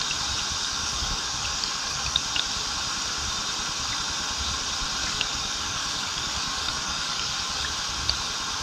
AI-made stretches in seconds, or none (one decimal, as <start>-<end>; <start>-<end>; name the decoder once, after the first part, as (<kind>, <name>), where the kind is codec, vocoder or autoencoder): 0.6-2.2 (codec, DAC); 5.0-7.7